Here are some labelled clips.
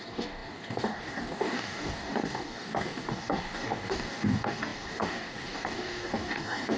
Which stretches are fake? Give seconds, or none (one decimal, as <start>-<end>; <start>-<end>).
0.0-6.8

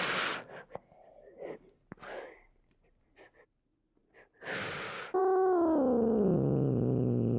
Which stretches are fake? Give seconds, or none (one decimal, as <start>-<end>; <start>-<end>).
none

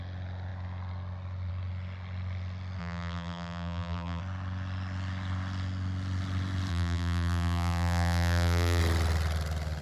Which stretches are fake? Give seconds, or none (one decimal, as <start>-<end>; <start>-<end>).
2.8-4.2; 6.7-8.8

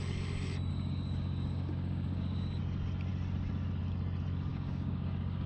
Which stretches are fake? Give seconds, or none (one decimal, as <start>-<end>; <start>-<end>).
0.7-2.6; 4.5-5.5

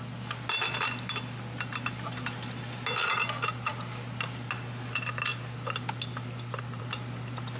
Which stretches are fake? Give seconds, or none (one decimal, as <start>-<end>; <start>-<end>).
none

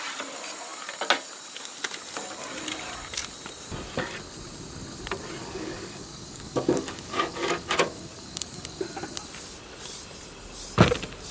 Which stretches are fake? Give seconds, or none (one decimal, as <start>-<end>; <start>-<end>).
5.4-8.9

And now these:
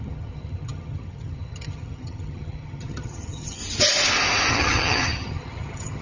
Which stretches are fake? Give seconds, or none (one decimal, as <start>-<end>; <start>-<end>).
0.0-3.6; 4.5-6.0

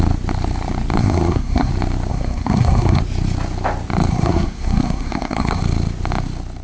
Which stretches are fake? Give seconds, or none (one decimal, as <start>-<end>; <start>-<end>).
1.0-1.7; 2.1-3.0; 4.1-5.6